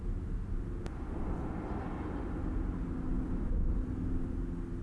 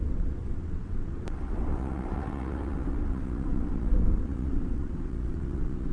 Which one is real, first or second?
first